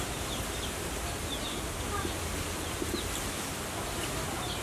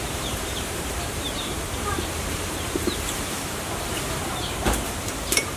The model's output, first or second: second